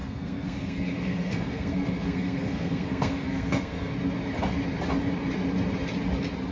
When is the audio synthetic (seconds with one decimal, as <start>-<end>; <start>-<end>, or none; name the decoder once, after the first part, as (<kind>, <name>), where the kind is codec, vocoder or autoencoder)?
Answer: 0.0-3.9 (codec, SNAC)